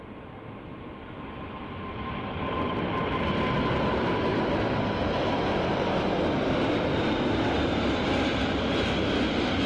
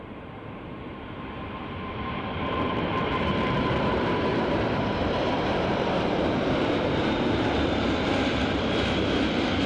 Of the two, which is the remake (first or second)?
second